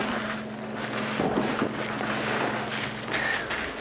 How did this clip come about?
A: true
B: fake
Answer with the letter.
A